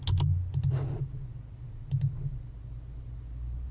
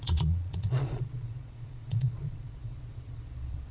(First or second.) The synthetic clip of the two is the second